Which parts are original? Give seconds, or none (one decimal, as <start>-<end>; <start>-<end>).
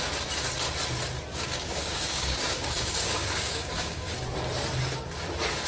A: 0.0-1.3; 4.1-5.7